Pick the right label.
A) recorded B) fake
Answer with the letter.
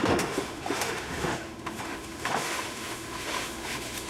B